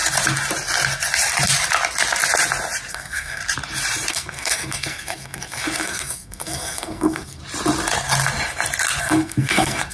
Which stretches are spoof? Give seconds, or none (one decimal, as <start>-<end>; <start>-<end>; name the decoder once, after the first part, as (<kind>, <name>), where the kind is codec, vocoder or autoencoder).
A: 2.9-3.4 (codec, SNAC); 4.1-7.4; 9.0-9.9